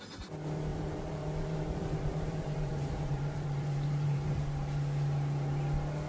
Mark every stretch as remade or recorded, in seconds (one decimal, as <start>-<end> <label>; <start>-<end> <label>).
0.0-0.7 recorded; 0.7-4.4 remade; 4.4-6.1 recorded